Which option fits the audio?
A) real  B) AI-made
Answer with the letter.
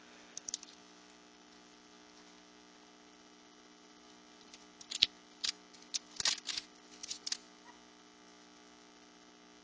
A